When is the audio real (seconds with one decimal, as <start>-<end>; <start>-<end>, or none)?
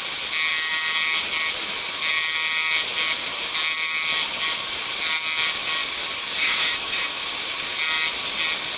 0.0-6.4; 7.2-8.8